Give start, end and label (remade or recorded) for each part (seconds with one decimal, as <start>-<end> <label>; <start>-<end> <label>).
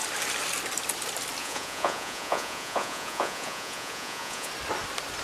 0.0-1.4 recorded; 1.4-4.5 remade; 4.5-5.2 recorded